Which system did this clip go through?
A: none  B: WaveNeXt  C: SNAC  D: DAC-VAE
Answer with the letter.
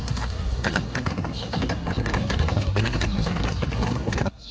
C